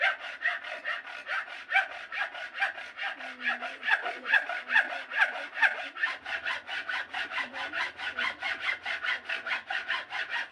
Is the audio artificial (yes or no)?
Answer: no